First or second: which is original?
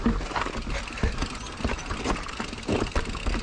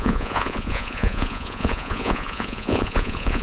first